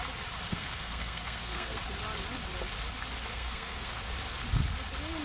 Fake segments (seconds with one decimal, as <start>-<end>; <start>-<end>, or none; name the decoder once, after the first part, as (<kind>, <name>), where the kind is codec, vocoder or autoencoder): 0.5-1.8 (codec, SNAC); 3.3-4.0

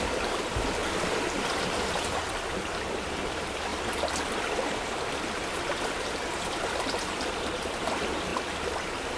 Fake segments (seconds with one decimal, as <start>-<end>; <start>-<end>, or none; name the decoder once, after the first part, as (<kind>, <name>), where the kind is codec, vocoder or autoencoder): 0.0-3.7 (vocoder, BigVGAN v2); 4.4-8.3

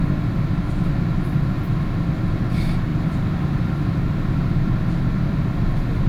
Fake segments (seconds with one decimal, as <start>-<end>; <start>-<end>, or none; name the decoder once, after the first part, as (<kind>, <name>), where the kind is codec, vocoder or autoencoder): 2.9-4.5 (vocoder, BigVGAN v2)

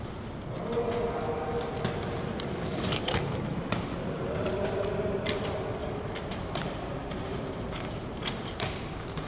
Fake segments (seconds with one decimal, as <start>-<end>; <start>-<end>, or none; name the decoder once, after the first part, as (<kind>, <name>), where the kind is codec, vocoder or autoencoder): 2.7-3.4 (vocoder, BigVGAN v2); 5.8-8.9

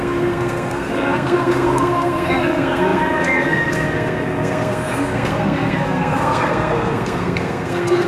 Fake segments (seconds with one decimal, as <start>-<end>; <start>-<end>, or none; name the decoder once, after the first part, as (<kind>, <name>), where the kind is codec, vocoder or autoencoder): 0.0-8.1 (codec, SNAC)

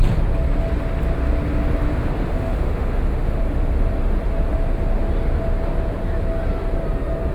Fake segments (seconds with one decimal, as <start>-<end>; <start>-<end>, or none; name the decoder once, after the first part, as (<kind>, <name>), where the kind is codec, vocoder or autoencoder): 1.9-3.4 (autoencoder, DAC-VAE)

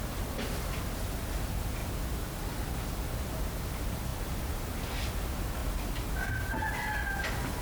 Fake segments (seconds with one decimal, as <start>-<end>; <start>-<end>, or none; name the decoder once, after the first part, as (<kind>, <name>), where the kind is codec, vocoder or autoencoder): none

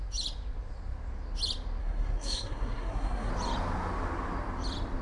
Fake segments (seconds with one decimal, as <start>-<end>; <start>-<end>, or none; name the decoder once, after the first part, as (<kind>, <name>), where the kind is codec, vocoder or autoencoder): 1.8-3.3 (codec, SNAC)